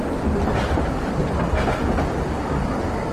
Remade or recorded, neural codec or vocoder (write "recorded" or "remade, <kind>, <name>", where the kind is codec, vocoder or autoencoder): recorded